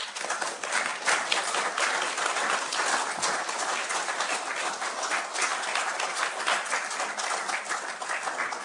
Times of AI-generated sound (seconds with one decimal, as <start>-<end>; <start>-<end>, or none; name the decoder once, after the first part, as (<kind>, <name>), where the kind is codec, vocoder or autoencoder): none